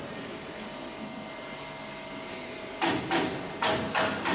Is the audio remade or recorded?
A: recorded